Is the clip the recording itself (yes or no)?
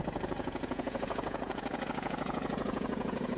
no